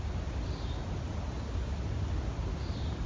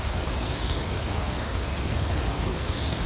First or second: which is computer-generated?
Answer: second